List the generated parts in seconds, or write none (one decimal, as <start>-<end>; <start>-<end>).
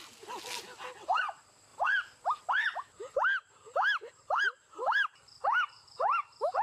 1.7-2.5